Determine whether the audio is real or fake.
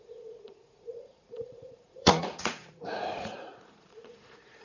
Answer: fake